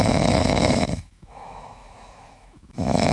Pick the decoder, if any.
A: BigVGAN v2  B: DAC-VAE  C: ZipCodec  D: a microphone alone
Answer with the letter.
B